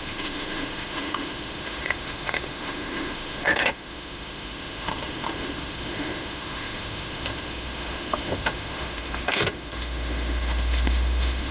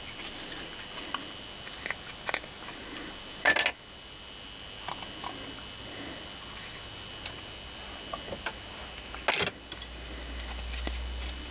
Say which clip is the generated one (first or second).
first